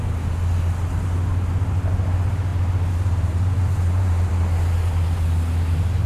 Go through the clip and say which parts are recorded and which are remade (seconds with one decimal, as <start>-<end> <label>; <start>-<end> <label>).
0.0-2.5 recorded; 2.5-4.3 remade; 4.3-6.1 recorded

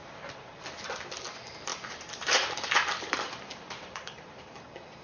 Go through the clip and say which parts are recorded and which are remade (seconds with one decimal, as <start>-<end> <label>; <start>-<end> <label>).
0.0-1.7 recorded; 1.7-4.6 remade; 4.6-5.0 recorded

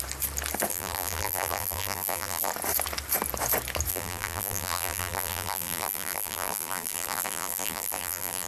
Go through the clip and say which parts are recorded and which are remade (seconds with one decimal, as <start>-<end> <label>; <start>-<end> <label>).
0.0-0.7 recorded; 0.7-2.5 remade; 2.5-3.9 recorded; 3.9-8.5 remade